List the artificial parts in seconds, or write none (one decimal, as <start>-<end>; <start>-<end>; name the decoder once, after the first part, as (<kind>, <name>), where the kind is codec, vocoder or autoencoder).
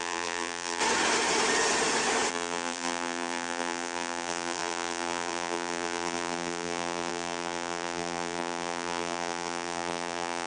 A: 0.0-0.8 (vocoder, BigVGAN v2); 2.3-10.5